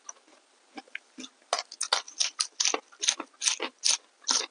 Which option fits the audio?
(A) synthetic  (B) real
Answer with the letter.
B